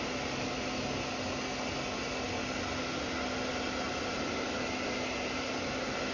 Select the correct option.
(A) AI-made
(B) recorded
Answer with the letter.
B